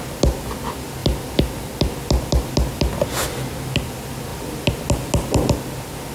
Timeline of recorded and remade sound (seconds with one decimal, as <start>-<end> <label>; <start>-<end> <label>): 0.0-1.0 recorded; 1.0-2.2 remade; 2.2-6.1 recorded